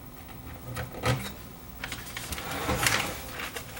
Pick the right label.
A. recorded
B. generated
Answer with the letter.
B